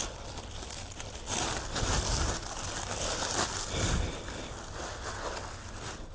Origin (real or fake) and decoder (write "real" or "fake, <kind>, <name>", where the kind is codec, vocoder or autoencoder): real